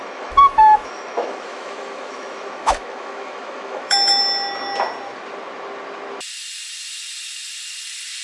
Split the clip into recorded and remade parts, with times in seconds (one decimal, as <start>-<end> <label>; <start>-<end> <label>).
0.0-4.2 remade; 4.2-8.2 recorded